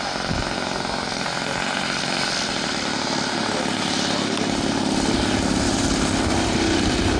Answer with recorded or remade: recorded